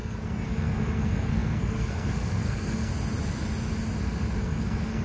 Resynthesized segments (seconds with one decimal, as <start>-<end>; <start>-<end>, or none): 0.0-2.9; 4.4-5.0